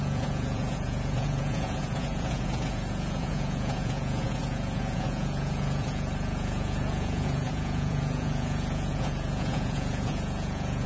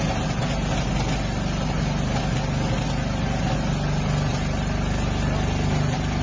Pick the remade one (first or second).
first